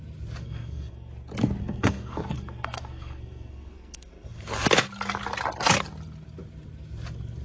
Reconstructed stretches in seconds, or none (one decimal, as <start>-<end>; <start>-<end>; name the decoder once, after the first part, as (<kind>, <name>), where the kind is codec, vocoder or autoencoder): 0.4-1.1 (codec, SNAC); 1.6-4.4